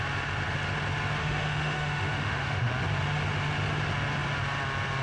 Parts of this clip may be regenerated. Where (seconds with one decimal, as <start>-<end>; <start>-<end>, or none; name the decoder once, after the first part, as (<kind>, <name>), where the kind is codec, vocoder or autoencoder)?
1.2-2.7 (autoencoder, DAC-VAE)

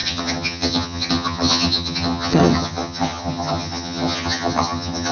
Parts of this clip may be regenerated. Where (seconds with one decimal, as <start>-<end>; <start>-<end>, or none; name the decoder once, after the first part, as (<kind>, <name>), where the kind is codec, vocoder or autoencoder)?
0.0-5.1 (vocoder, HiFi-GAN)

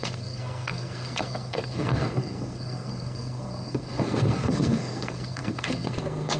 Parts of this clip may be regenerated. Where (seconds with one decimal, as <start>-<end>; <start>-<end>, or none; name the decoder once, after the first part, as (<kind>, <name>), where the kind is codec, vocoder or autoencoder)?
0.0-6.4 (codec, SNAC)

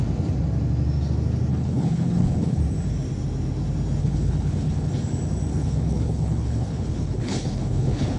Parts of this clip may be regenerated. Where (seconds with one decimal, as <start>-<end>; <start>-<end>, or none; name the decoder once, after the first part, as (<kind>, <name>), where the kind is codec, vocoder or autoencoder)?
1.5-2.6 (codec, HILCodec); 4.0-4.9; 5.5-8.2

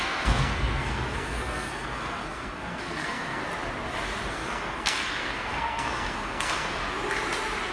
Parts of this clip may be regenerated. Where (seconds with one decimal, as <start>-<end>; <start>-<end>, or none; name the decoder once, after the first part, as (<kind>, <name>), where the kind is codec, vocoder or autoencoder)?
0.0-3.4 (codec, SNAC); 4.3-6.8